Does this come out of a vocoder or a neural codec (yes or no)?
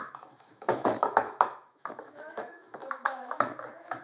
yes